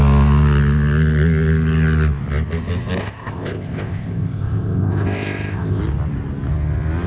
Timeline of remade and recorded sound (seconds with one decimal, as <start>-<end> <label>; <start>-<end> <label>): 0.0-3.0 recorded; 3.0-5.8 remade; 5.8-7.1 recorded

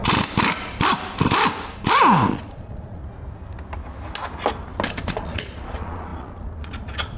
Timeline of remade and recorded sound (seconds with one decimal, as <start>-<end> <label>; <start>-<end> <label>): 0.0-2.3 recorded; 2.3-3.0 remade; 3.0-4.9 recorded; 4.9-7.2 remade

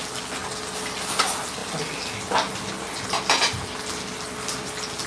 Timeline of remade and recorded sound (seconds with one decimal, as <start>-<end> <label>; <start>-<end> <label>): 0.0-5.1 recorded

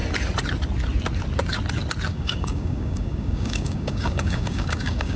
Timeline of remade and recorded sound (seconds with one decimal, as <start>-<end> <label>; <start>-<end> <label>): 0.0-2.1 recorded; 2.1-5.2 remade

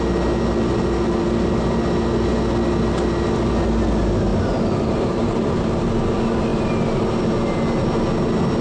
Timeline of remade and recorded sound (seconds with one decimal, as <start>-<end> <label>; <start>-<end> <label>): 0.0-4.3 recorded; 4.3-5.9 remade; 5.9-8.6 recorded

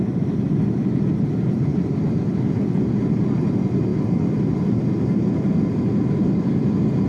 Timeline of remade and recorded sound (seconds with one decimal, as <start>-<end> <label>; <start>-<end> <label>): 0.0-7.1 recorded

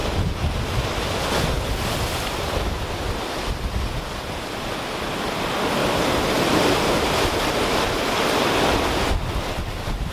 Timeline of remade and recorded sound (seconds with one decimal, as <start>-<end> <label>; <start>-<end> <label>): 0.0-5.8 recorded; 5.8-7.5 remade; 7.5-10.1 recorded

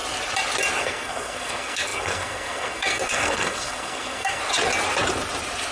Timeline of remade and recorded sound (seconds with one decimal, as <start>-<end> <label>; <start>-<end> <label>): 0.0-0.8 recorded; 0.8-4.4 remade; 4.4-5.7 recorded